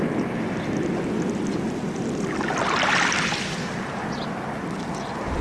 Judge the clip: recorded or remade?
recorded